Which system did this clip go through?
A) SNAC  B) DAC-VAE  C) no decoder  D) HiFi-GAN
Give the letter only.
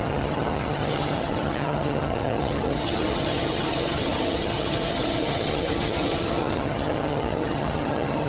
D